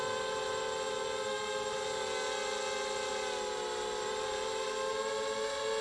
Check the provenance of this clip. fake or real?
real